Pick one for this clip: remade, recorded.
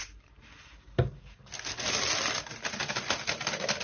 recorded